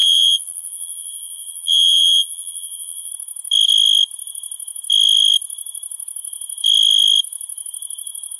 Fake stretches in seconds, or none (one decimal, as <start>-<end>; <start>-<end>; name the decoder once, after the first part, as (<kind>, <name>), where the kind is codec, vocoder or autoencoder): 0.0-3.1 (vocoder, BigVGAN v2)